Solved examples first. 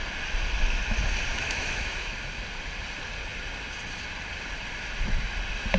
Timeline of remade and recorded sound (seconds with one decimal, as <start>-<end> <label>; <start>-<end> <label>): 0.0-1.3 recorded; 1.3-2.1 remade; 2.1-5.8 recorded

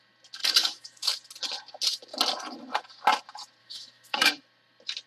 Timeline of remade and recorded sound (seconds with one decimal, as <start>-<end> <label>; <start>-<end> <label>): 0.0-0.4 recorded; 0.4-1.1 remade; 1.1-3.6 recorded; 3.6-4.3 remade; 4.3-5.1 recorded

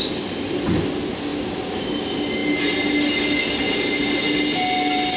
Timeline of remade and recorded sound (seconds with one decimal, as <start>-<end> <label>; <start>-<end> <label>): 0.0-5.2 recorded